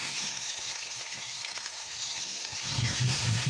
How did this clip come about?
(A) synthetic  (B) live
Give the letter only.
A